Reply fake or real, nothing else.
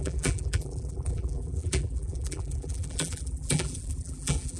fake